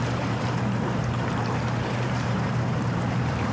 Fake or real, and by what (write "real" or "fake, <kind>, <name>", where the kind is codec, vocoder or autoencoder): fake, vocoder, BigVGAN v2